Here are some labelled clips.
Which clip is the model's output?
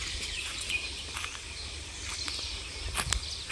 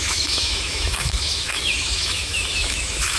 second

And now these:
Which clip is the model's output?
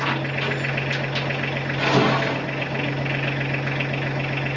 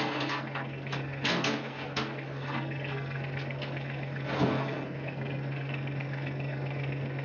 second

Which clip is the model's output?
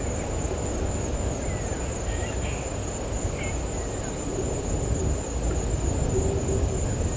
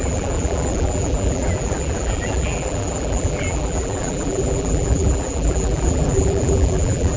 second